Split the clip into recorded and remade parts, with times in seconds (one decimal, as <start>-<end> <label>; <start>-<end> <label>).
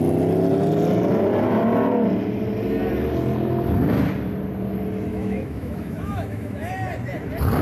0.0-5.1 recorded; 5.1-6.7 remade; 6.7-7.6 recorded